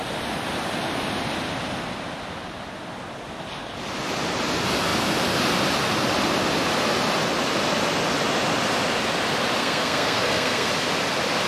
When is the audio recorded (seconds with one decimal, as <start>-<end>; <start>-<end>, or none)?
0.0-9.6; 10.7-11.5